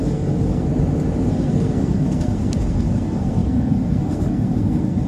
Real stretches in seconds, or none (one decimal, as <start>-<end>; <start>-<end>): 0.7-1.3